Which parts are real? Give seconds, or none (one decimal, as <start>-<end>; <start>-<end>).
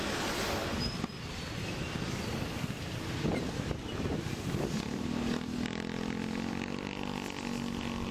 0.0-8.1